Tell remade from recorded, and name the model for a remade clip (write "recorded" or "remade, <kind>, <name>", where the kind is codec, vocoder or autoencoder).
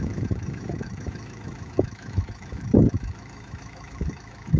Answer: remade, autoencoder, DAC-VAE